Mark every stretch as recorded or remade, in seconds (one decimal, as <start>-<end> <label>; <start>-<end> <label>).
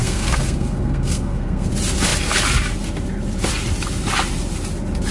0.0-1.7 remade; 1.7-5.1 recorded